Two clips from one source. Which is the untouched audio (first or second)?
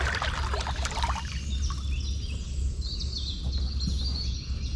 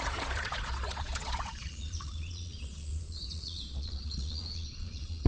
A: first